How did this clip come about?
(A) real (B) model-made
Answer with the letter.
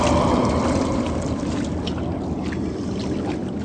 A